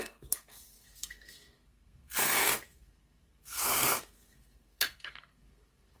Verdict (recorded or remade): remade